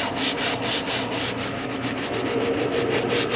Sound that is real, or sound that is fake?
real